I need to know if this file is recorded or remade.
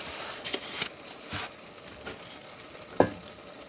recorded